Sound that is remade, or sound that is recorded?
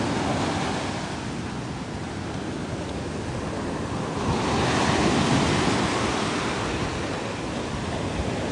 recorded